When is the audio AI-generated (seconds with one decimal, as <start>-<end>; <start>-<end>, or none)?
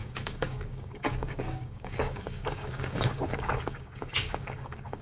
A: 0.0-5.0